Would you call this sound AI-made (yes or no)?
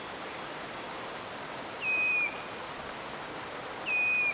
no